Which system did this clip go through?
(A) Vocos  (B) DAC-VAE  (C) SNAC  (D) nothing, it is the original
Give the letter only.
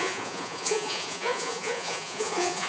A